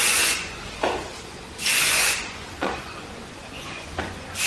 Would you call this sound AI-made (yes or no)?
yes